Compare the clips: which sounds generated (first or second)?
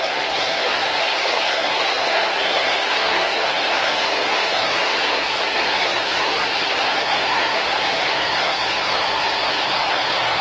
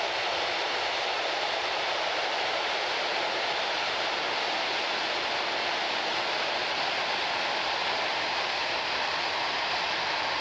first